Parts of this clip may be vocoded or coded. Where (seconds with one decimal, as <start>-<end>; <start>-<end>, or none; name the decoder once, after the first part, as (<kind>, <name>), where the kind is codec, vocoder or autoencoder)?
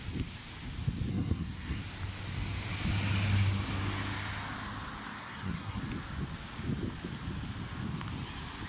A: 1.1-1.8 (codec, SNAC); 5.2-5.8